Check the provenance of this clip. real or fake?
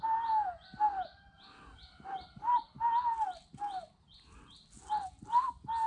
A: real